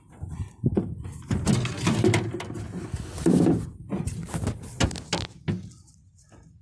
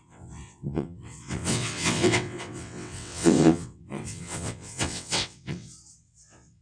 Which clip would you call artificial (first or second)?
second